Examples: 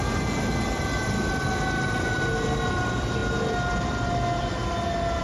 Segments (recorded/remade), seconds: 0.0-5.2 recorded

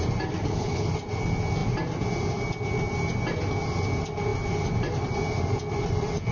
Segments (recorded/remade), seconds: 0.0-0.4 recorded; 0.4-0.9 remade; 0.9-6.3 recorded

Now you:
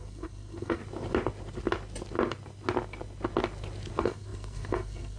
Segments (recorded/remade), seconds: 0.0-0.8 remade; 0.8-3.9 recorded; 3.9-5.2 remade